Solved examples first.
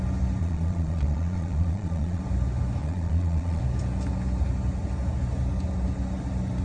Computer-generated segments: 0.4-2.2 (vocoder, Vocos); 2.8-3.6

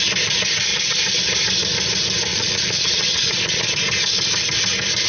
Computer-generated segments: 0.7-1.2 (vocoder, Vocos); 2.3-3.7